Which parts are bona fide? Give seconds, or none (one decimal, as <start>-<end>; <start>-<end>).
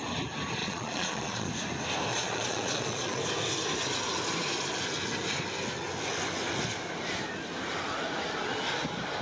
0.0-0.6; 1.5-2.1; 3.2-9.2